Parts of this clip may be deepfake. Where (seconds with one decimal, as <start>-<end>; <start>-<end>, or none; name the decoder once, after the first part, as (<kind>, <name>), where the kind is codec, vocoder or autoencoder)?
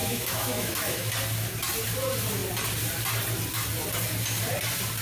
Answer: 0.0-1.1 (autoencoder, DAC-VAE)